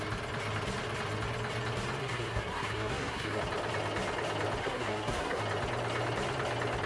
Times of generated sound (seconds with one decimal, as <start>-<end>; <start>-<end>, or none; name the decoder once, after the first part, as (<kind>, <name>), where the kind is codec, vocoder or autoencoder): 2.0-3.4 (codec, SNAC); 4.6-5.4